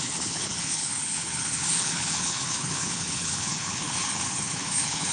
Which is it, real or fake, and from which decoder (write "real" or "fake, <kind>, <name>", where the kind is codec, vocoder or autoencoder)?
fake, codec, HILCodec